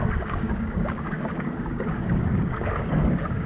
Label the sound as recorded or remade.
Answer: remade